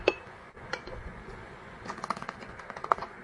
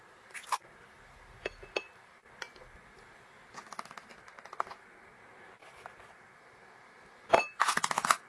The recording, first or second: second